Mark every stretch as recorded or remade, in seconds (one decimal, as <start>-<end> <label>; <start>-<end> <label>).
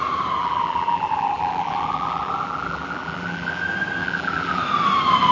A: 0.0-0.4 recorded; 0.4-3.6 remade; 3.6-4.0 recorded; 4.0-4.6 remade; 4.6-5.3 recorded